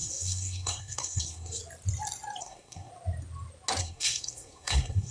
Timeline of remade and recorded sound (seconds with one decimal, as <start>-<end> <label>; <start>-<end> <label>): 0.0-1.6 remade; 1.6-2.4 recorded; 2.4-2.9 remade; 2.9-3.8 recorded; 3.8-5.1 remade